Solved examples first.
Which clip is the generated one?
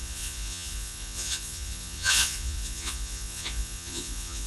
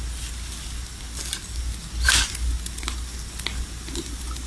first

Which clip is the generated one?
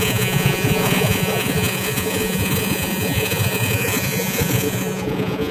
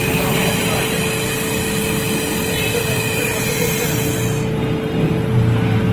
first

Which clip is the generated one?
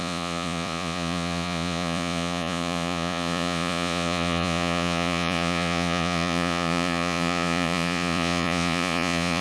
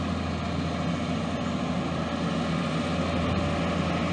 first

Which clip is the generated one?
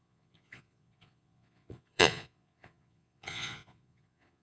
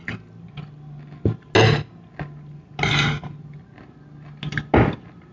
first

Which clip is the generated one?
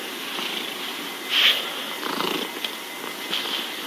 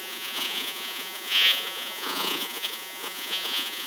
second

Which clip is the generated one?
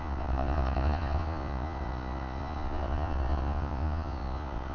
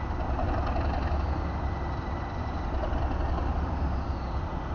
first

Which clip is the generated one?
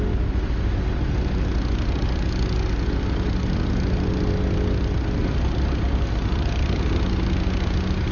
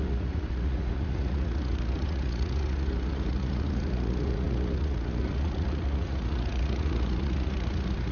second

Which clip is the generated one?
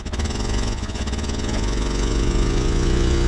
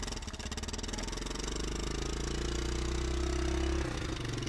first